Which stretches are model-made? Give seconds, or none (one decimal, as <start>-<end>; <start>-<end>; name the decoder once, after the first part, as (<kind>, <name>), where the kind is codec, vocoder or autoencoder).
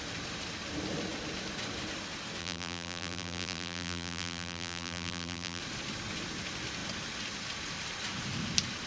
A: 2.4-5.6 (vocoder, BigVGAN v2)